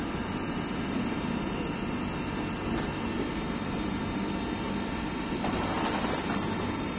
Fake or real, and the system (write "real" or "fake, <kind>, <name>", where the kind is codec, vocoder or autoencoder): real